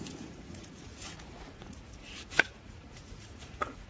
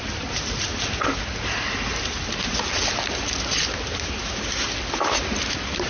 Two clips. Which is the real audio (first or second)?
second